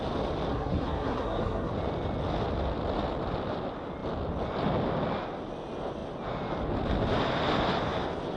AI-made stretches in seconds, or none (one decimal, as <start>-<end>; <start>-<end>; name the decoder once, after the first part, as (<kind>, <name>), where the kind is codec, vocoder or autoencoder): 0.5-1.7 (codec, SNAC)